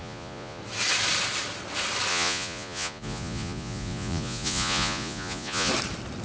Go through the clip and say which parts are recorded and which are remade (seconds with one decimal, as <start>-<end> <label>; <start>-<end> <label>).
0.0-0.6 remade; 0.6-2.1 recorded; 2.1-5.7 remade; 5.7-6.2 recorded